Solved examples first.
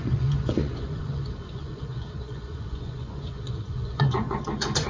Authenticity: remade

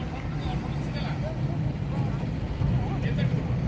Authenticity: recorded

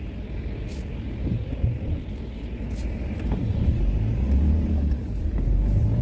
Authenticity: recorded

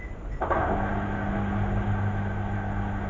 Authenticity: recorded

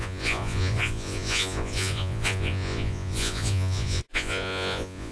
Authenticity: remade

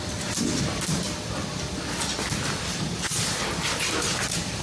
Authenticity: recorded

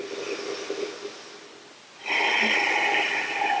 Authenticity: recorded